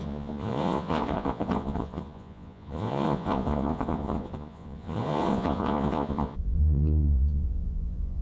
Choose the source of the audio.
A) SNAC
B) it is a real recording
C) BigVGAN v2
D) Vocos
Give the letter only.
D